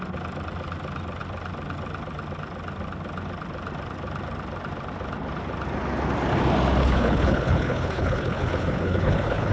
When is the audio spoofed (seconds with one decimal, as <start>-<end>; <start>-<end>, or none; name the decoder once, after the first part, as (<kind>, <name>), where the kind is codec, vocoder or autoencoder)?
6.8-9.5 (codec, HILCodec)